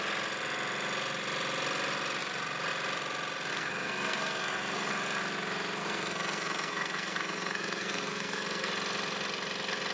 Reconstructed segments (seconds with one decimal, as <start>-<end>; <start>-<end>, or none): 3.5-4.9; 5.8-8.7